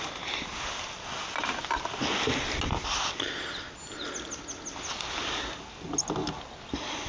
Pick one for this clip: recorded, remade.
recorded